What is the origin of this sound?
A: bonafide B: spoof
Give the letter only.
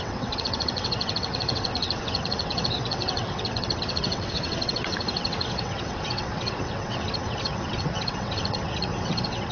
B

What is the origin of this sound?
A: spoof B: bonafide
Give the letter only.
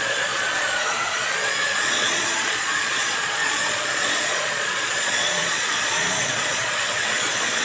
A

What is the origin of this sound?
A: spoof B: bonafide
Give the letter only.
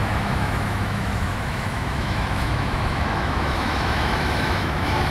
A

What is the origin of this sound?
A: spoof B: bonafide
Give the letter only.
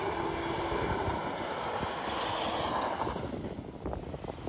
B